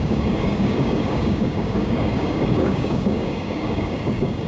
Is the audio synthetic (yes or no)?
yes